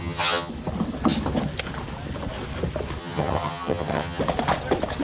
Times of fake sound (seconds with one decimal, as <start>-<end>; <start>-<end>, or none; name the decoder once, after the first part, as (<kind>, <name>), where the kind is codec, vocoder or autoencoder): 0.0-0.5 (vocoder, HiFi-GAN); 3.0-4.2